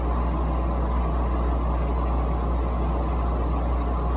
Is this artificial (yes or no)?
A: no